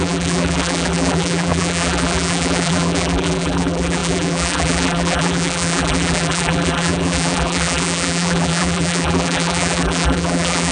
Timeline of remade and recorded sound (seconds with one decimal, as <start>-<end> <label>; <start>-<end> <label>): 0.0-10.7 remade